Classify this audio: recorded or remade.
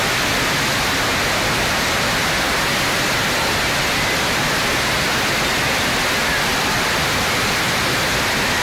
recorded